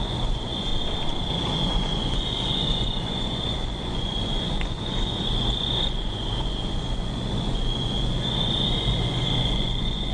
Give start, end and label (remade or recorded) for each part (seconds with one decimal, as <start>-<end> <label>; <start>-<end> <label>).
0.0-0.7 remade; 0.7-1.3 recorded; 1.3-10.1 remade